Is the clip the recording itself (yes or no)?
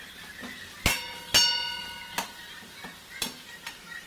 yes